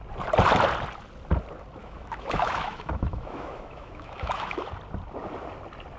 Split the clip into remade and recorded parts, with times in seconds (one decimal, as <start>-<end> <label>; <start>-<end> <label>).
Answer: 0.0-1.8 recorded; 1.8-4.7 remade; 4.7-6.0 recorded